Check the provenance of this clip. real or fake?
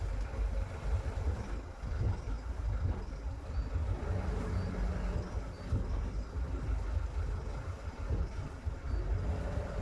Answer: real